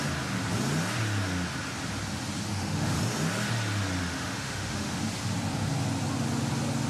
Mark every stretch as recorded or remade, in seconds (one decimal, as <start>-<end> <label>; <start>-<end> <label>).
0.0-2.5 recorded; 2.5-3.0 remade; 3.0-4.0 recorded; 4.0-5.0 remade; 5.0-6.9 recorded